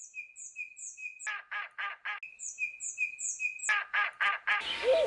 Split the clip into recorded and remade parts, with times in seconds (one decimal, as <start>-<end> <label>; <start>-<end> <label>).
0.0-5.1 recorded